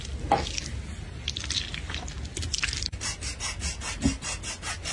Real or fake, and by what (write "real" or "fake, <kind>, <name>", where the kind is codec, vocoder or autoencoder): real